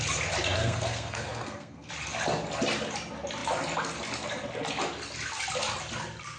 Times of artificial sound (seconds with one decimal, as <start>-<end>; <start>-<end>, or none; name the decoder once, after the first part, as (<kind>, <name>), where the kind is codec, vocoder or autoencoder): 0.6-1.9 (codec, SNAC)